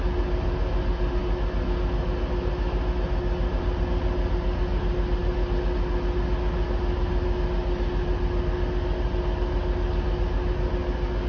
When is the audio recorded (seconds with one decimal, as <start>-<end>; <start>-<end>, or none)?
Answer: 0.0-11.3